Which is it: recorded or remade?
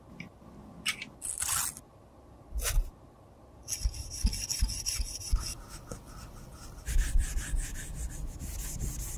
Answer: recorded